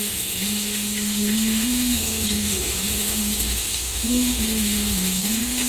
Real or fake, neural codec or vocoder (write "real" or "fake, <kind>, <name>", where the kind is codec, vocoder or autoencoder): fake, autoencoder, DAC-VAE